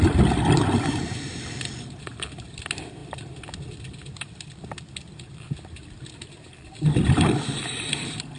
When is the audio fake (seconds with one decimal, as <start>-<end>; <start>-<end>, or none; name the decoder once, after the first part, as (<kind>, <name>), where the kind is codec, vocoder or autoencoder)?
none